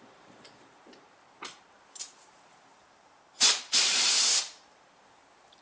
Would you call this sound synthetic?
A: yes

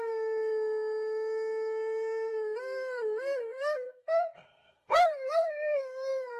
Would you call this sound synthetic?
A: yes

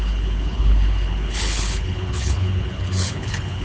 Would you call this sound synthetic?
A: yes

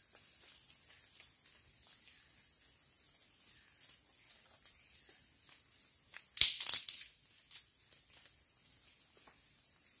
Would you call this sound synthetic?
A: no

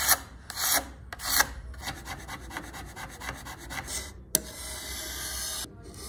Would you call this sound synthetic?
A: no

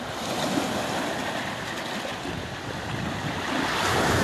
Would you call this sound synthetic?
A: no